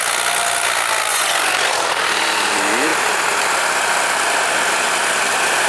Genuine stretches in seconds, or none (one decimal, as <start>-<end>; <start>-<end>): 0.0-1.1; 1.7-5.7